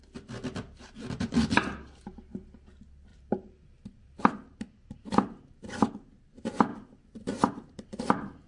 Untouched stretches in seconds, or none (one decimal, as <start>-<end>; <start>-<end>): 0.0-3.1; 4.3-5.0; 5.7-6.7; 8.0-8.5